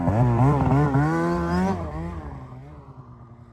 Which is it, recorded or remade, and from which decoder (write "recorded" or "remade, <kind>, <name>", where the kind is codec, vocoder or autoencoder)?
recorded